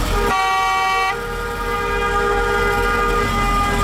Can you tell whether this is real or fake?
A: real